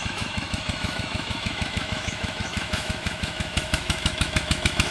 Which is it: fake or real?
fake